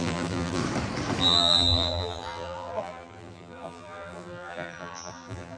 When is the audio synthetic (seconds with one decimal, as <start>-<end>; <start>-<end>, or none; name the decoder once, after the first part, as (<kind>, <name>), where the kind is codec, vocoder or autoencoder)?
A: 0.0-0.6 (vocoder, BigVGAN v2); 1.2-5.6